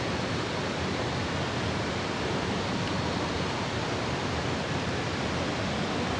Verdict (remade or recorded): recorded